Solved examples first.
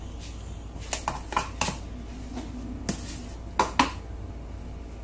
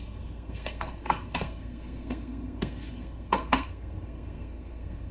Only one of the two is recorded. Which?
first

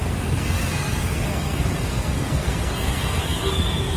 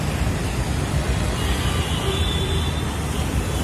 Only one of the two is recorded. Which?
second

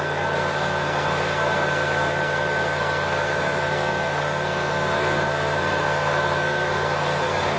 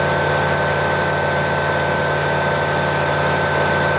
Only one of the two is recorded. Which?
second